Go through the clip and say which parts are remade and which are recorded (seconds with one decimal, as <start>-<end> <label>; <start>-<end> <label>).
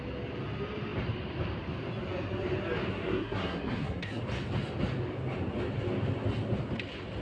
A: 0.0-2.9 recorded; 2.9-4.2 remade; 4.2-7.2 recorded